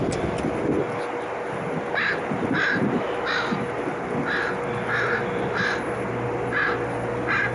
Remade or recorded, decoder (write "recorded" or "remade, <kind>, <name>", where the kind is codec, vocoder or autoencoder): recorded